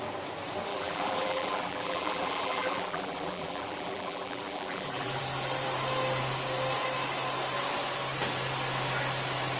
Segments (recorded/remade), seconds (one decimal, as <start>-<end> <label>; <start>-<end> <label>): 0.0-0.7 recorded; 0.7-5.2 remade; 5.2-9.6 recorded